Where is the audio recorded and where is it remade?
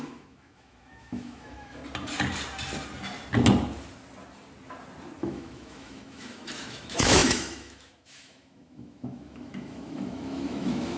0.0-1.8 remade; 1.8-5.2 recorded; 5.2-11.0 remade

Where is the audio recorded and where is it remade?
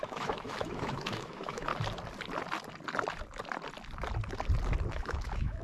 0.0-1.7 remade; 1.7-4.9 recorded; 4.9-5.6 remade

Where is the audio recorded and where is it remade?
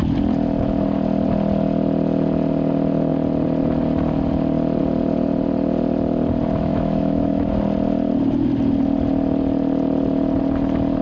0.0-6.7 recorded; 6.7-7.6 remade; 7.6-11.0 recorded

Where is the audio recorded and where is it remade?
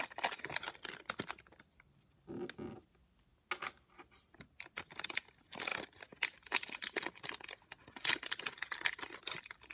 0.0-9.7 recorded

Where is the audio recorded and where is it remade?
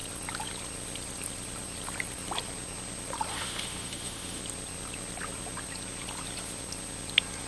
0.0-3.3 recorded; 3.3-4.4 remade; 4.4-7.5 recorded